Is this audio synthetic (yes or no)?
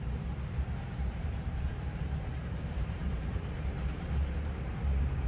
yes